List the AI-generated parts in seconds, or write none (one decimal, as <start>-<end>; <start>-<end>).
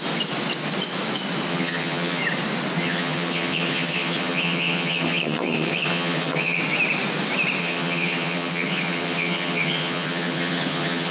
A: 1.5-2.2; 2.8-6.6; 7.6-11.1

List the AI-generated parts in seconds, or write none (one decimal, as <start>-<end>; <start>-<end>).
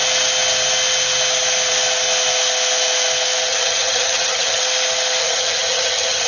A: 3.5-4.6; 5.2-6.3